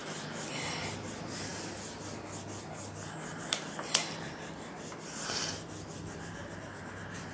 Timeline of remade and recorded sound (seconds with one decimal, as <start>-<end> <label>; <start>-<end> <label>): 0.0-7.3 recorded